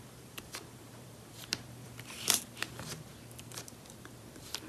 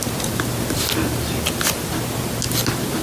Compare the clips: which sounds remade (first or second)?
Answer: first